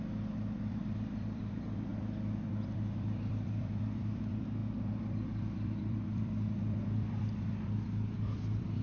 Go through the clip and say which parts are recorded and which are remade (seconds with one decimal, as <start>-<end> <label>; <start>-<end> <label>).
0.0-8.8 remade